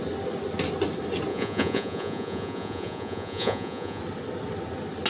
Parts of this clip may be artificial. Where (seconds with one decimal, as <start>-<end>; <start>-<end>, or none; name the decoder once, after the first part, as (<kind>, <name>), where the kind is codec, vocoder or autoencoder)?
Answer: 1.3-4.0 (vocoder, Vocos)